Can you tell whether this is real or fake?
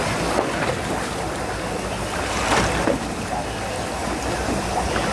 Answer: real